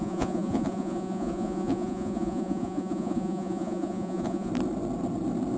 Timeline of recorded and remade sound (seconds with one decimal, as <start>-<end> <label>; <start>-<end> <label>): 0.0-4.5 remade; 4.5-5.6 recorded